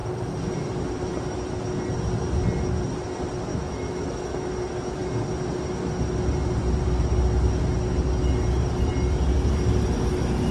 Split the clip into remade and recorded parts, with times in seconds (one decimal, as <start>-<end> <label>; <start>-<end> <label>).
0.0-3.5 recorded; 3.5-4.5 remade; 4.5-10.5 recorded